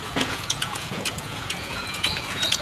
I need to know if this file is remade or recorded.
remade